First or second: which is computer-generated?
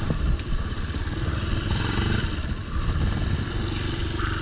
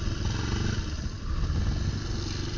first